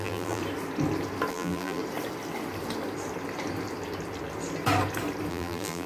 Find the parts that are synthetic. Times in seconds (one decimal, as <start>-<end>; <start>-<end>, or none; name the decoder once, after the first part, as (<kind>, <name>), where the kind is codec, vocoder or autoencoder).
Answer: 0.0-0.4 (vocoder, BigVGAN v2); 1.3-1.8; 5.3-5.9